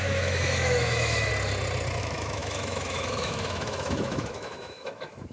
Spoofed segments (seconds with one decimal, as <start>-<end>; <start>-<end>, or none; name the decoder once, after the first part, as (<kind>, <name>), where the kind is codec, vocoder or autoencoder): 0.0-1.3 (autoencoder, DAC-VAE); 2.0-5.3